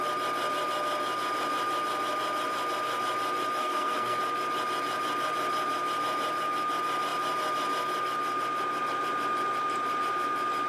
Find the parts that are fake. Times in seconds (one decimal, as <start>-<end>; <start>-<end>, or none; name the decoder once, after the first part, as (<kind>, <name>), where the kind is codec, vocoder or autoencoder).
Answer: 3.6-4.2 (codec, SNAC)